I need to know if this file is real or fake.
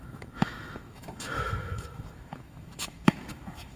fake